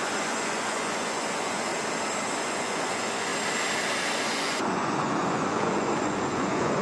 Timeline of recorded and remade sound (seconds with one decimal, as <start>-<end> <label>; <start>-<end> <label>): 0.0-1.7 remade; 1.7-2.4 recorded; 2.4-3.3 remade; 3.3-4.2 recorded; 4.2-6.8 remade